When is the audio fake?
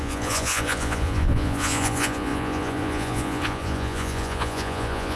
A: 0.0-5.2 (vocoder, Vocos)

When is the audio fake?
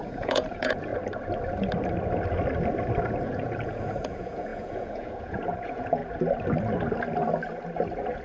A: 0.0-0.9 (vocoder, Vocos); 3.2-6.0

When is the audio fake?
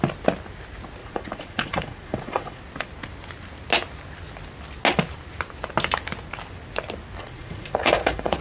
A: 1.0-2.6 (vocoder, Vocos); 7.2-8.4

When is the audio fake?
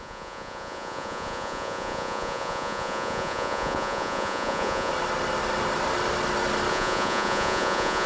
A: 0.0-4.9 (vocoder, Vocos); 6.7-8.1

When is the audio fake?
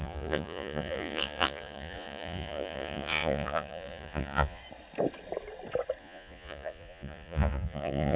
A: 0.0-4.6 (vocoder, Vocos); 6.0-8.2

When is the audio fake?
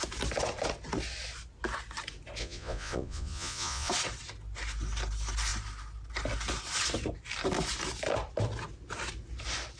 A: 2.4-3.9 (vocoder, Vocos)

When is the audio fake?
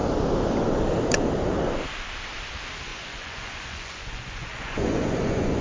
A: 2.9-5.6 (vocoder, Vocos)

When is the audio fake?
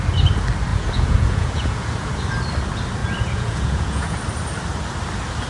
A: 0.7-2.1 (vocoder, Vocos); 3.0-4.2